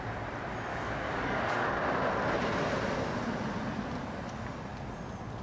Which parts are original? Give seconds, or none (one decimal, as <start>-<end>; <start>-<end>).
0.0-0.7; 1.8-5.4